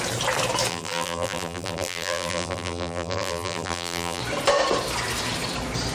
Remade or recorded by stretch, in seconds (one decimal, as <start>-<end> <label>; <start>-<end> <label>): 0.0-0.7 recorded; 0.7-4.2 remade; 4.2-5.9 recorded